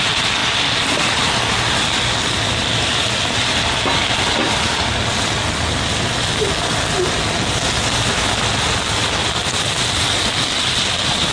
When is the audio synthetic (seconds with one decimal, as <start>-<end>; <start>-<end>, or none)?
none